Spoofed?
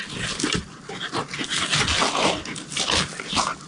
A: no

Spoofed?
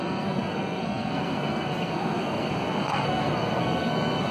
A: yes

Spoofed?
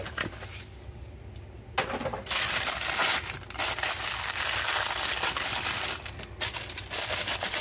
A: no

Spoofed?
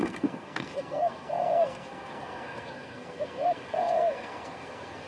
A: yes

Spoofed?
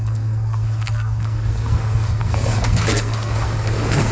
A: yes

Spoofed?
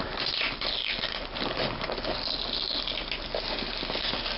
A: no